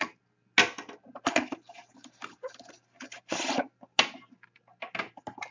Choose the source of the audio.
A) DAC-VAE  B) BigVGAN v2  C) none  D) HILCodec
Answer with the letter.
C